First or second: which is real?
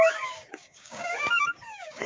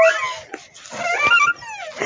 second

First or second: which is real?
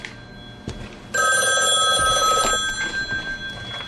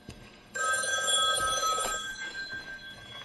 first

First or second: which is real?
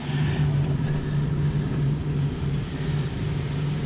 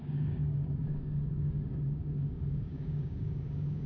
first